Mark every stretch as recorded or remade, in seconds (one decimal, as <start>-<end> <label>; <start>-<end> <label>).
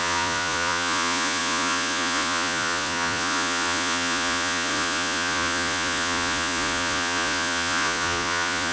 0.0-8.7 remade